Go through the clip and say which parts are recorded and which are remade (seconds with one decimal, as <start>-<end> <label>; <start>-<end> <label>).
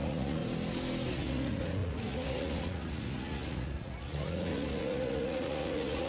0.0-0.4 remade; 0.4-1.1 recorded; 1.1-6.1 remade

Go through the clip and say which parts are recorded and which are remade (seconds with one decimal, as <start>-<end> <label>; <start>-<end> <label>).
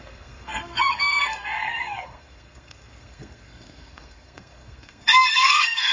0.0-5.9 remade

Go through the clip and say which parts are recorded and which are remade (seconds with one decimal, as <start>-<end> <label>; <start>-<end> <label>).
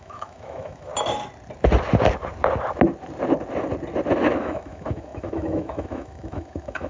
0.0-0.9 remade; 0.9-4.4 recorded; 4.4-6.9 remade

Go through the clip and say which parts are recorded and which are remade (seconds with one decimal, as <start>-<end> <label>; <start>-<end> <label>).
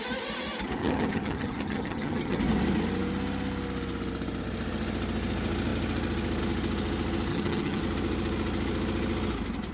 0.0-0.8 recorded; 0.8-2.4 remade; 2.4-7.3 recorded; 7.3-7.8 remade; 7.8-9.7 recorded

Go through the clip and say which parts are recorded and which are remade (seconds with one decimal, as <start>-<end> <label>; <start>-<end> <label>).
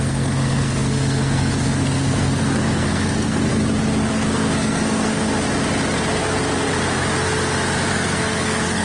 0.0-3.5 remade; 3.5-4.1 recorded; 4.1-5.2 remade; 5.2-7.9 recorded; 7.9-8.8 remade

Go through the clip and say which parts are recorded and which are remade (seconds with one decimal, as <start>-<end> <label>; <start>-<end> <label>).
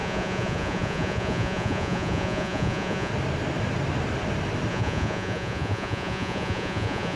0.0-3.1 remade; 3.1-4.7 recorded; 4.7-7.2 remade